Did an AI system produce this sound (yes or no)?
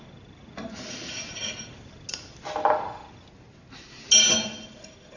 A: no